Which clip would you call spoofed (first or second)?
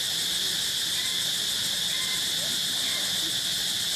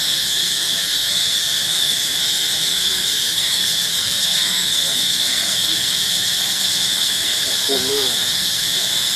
second